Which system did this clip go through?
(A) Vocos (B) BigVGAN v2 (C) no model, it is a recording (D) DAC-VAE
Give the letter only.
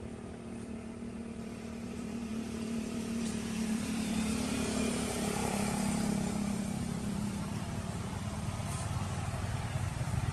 B